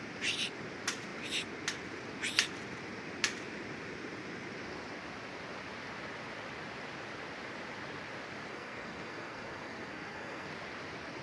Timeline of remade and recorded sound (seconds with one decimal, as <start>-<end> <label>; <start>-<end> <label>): 0.0-8.5 recorded; 8.5-10.5 remade; 10.5-11.2 recorded